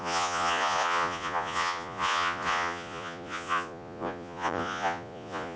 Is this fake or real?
fake